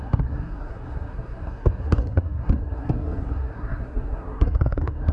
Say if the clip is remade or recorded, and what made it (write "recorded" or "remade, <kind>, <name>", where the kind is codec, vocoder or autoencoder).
remade, codec, SNAC